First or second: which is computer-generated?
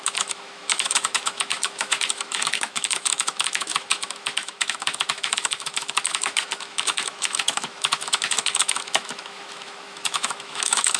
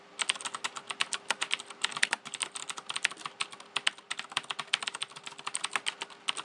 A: first